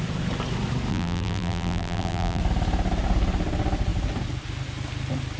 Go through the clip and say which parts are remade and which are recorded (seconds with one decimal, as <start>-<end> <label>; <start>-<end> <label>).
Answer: 0.0-0.9 recorded; 0.9-2.4 remade; 2.4-5.4 recorded